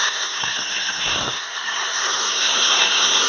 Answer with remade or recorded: remade